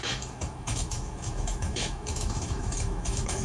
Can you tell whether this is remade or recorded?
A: remade